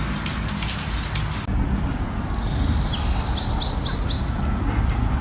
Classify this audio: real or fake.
real